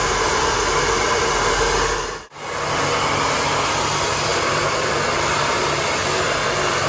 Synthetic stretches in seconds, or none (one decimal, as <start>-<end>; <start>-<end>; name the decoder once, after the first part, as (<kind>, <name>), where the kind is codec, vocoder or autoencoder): 4.3-4.9 (vocoder, BigVGAN v2); 6.0-6.9